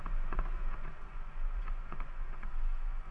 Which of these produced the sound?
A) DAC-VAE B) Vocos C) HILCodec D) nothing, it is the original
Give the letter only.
B